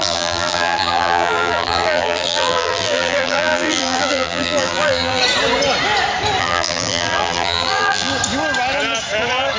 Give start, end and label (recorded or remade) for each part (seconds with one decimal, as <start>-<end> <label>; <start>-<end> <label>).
0.0-5.2 remade; 5.2-6.4 recorded; 6.4-8.1 remade; 8.1-9.6 recorded